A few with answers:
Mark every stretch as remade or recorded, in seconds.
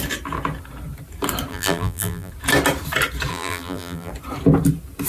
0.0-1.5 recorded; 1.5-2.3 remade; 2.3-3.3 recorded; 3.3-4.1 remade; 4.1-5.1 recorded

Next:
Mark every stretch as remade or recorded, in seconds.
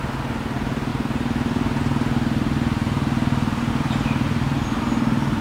0.0-5.4 recorded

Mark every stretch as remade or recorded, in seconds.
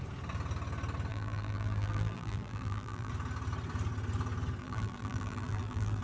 0.0-1.1 recorded; 1.1-3.1 remade; 3.1-4.6 recorded; 4.6-6.0 remade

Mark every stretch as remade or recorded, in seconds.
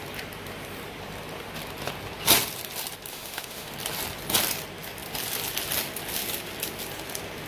0.0-3.1 recorded; 3.1-3.7 remade; 3.7-7.5 recorded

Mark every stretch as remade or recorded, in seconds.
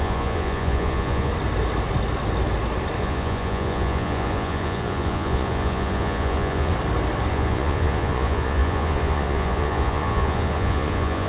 0.0-1.3 remade; 1.3-3.0 recorded; 3.0-6.7 remade; 6.7-7.3 recorded; 7.3-11.3 remade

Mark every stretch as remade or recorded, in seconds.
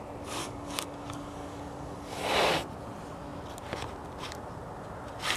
0.0-0.4 recorded; 0.4-2.2 remade; 2.2-5.4 recorded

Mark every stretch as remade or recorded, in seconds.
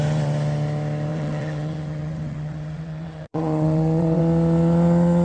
0.0-1.1 recorded; 1.1-4.2 remade; 4.2-5.2 recorded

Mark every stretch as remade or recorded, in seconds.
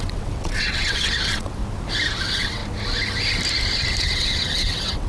0.0-1.6 remade; 1.6-2.2 recorded; 2.2-2.6 remade; 2.6-4.0 recorded; 4.0-5.1 remade